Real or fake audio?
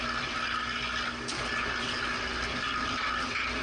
real